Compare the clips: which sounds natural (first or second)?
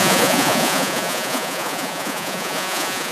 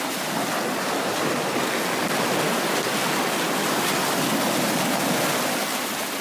second